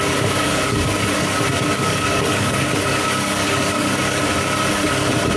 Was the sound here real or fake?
fake